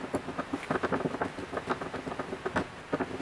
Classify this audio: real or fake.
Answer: real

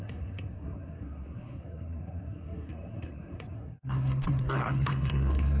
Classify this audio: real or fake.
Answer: fake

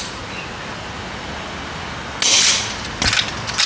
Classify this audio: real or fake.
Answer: real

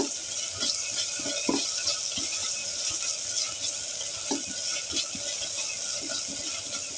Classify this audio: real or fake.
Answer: real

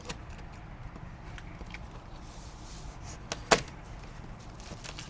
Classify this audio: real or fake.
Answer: real